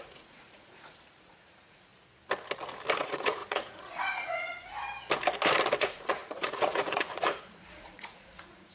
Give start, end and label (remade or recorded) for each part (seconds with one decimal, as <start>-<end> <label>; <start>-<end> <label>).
0.0-1.9 remade; 1.9-3.0 recorded; 3.0-4.8 remade; 4.8-5.8 recorded; 5.8-8.7 remade